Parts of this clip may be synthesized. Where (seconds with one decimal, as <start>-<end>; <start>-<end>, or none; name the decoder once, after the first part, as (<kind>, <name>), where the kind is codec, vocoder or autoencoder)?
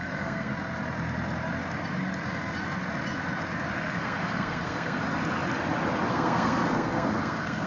0.0-0.5 (codec, SNAC); 3.8-5.0; 6.1-7.7